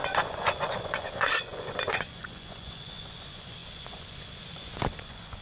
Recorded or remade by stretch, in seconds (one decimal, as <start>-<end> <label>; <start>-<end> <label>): 0.0-5.4 remade